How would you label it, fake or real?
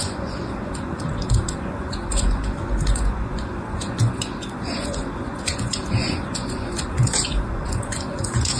fake